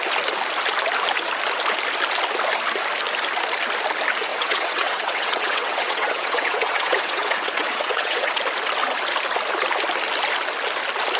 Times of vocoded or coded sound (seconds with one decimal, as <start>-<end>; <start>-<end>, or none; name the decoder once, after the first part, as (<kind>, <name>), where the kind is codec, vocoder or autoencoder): 4.3-8.4 (vocoder, WaveNeXt)